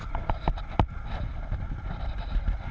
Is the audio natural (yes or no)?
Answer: yes